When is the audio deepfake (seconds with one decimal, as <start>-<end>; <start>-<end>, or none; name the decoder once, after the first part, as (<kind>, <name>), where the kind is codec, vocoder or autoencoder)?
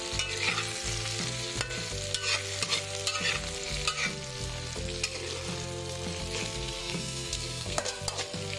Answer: 6.8-8.0 (codec, SNAC)